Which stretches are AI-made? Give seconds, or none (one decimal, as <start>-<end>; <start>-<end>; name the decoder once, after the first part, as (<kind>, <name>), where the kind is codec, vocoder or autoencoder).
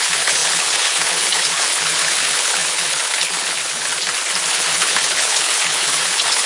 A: 0.0-3.9 (codec, HILCodec); 4.5-6.5